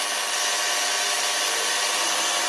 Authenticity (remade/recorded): recorded